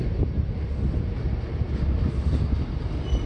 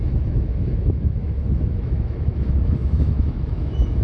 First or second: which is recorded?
first